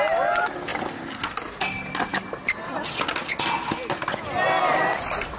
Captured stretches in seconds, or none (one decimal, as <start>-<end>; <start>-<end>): 0.0-5.4